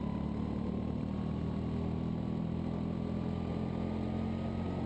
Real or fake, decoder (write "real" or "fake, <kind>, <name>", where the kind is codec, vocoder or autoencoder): real